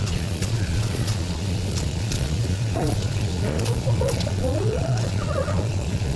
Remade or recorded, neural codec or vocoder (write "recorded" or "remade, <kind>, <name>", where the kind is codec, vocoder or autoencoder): remade, vocoder, Vocos